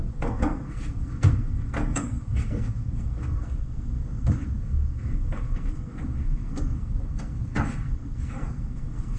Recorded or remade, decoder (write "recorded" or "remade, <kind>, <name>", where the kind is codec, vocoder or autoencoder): remade, codec, SNAC